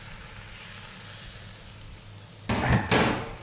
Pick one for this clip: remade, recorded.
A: recorded